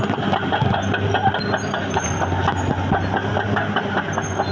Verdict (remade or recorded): recorded